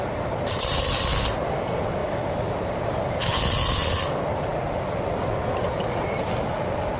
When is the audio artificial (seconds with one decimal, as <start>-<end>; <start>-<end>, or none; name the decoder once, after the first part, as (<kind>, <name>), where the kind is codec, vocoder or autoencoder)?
none